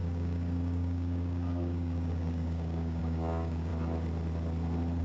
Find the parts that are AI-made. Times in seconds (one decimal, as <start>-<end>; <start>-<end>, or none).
0.0-3.7